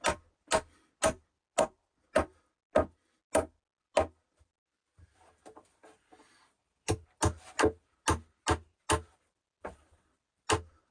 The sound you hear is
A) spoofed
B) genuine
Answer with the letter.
B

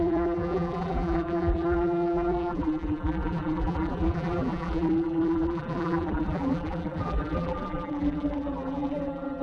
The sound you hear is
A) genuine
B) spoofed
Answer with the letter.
B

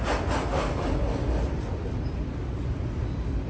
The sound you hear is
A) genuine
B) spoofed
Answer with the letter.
A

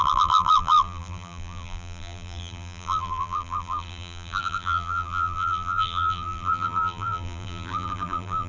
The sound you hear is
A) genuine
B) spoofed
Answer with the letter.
B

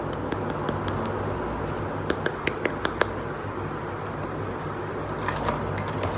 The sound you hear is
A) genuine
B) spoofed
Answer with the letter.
A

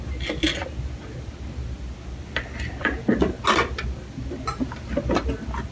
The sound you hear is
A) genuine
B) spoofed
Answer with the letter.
A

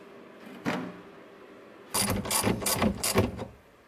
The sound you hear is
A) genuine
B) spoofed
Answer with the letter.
A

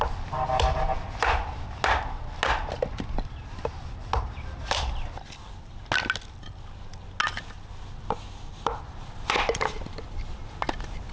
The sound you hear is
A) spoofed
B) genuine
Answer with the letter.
B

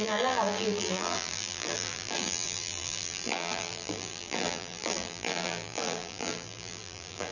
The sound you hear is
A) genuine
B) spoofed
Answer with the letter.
B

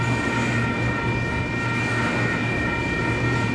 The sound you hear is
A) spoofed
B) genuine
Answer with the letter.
B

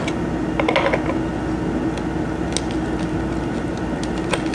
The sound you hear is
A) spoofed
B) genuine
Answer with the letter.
B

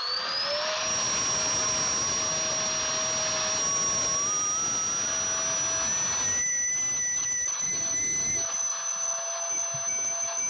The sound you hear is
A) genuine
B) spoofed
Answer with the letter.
A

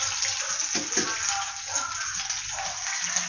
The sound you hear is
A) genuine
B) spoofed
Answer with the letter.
A